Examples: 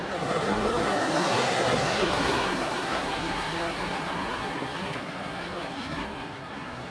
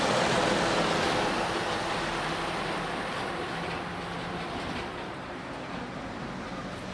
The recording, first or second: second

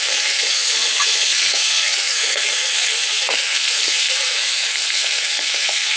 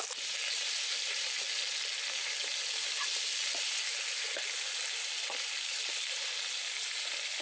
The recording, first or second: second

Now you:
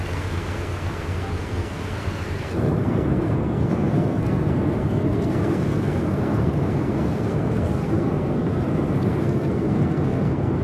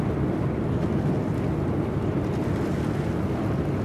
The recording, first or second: second